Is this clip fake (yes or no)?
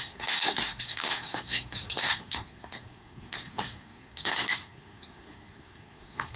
yes